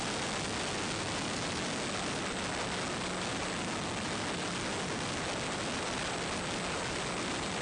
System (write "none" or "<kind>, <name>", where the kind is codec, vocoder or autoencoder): none